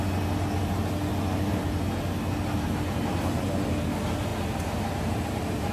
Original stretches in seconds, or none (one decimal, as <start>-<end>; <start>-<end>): 0.0-5.7